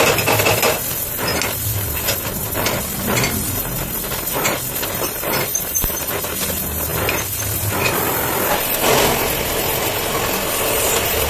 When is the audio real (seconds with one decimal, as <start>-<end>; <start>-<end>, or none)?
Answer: 0.0-11.3